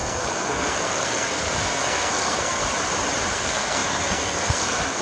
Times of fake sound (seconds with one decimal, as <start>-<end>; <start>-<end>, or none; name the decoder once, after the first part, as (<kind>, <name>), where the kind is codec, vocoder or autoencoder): 0.0-2.6 (codec, SNAC); 3.3-5.0